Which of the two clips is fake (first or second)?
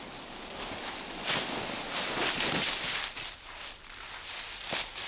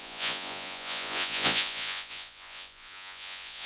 second